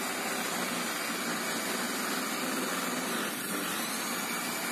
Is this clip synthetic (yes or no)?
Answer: no